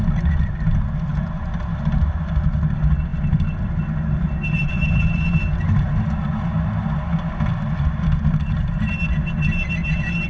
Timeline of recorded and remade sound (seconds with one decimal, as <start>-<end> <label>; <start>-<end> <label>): 0.0-10.3 recorded